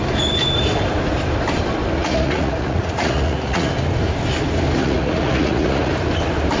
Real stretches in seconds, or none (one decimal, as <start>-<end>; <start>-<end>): 0.0-2.0; 3.7-4.8; 5.9-6.6